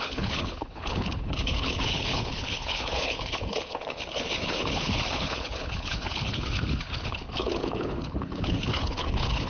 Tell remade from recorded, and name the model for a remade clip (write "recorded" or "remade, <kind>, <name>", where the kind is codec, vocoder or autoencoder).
remade, codec, HILCodec